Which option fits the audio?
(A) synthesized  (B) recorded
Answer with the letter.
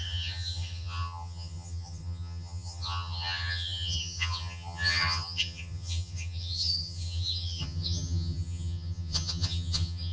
A